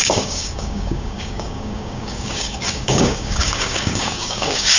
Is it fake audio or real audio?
fake